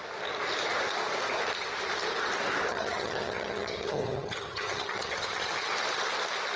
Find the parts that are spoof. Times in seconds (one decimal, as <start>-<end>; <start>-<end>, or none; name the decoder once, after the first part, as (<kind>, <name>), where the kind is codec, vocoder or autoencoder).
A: 2.7-5.5 (vocoder, HiFi-GAN)